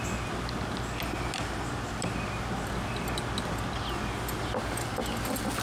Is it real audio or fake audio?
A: real